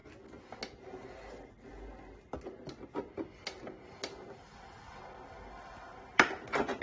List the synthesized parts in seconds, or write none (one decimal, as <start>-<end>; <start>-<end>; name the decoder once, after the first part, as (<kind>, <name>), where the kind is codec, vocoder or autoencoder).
none